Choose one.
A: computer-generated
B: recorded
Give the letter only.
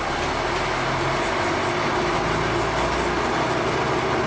B